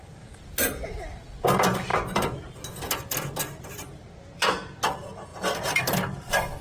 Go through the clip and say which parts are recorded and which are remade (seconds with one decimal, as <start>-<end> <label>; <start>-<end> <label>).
0.0-5.3 remade; 5.3-5.8 recorded; 5.8-6.6 remade